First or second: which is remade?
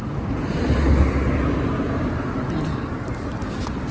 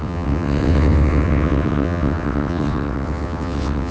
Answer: second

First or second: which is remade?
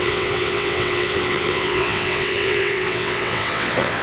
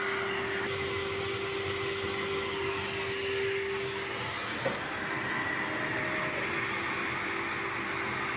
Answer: first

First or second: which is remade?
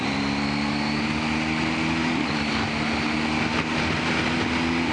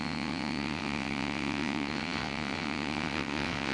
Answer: second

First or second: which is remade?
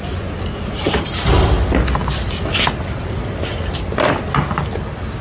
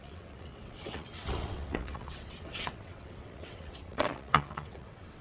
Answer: second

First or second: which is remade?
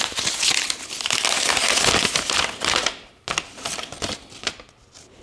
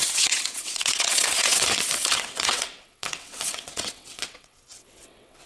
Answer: second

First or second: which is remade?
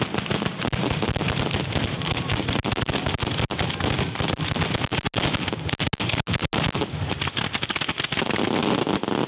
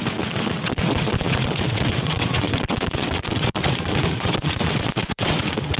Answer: second